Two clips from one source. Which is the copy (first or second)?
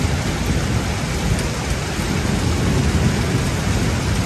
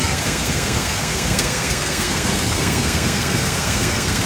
second